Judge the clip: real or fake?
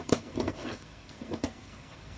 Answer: fake